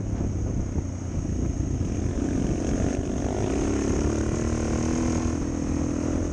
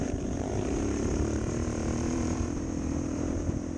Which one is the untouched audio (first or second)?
first